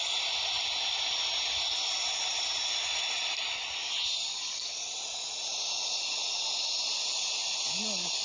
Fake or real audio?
real